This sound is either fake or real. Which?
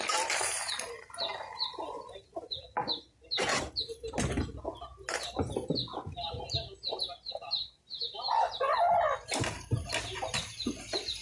real